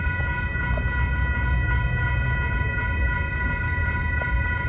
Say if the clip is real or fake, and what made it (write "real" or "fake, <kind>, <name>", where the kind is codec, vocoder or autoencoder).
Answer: real